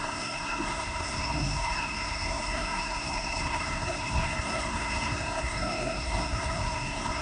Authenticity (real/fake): fake